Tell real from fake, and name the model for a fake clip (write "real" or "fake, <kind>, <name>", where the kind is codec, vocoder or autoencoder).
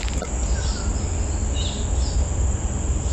real